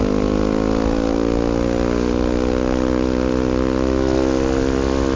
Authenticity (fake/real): real